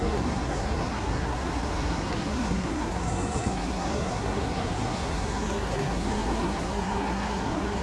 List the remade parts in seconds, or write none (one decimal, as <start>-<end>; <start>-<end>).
0.0-7.8